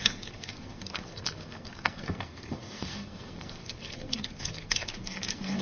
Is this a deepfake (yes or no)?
yes